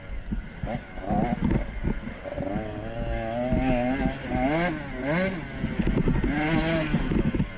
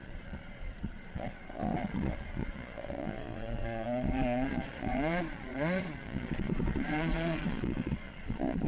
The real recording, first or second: first